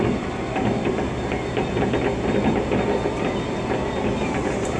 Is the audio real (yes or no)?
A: yes